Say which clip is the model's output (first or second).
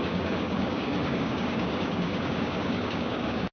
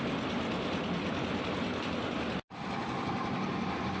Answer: first